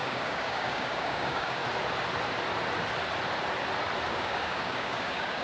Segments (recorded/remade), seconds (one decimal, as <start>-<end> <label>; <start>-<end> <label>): 0.0-1.6 remade; 1.6-4.1 recorded; 4.1-5.4 remade